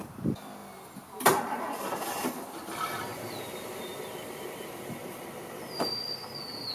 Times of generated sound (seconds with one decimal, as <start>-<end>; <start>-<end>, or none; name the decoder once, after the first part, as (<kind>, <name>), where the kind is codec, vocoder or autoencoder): 0.0-0.6 (vocoder, BigVGAN v2); 1.2-3.9; 5.7-6.7